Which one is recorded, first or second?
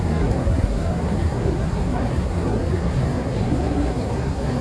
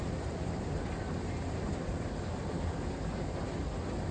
second